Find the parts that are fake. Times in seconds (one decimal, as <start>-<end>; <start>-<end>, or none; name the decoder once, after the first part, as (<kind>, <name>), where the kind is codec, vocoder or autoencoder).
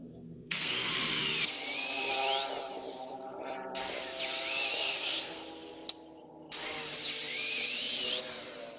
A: 0.0-0.9 (codec, SNAC); 4.8-5.4